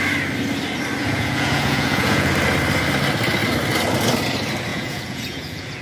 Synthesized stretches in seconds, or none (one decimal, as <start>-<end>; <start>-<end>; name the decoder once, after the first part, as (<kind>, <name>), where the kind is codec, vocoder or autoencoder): 1.0-2.3 (vocoder, Vocos); 4.7-5.8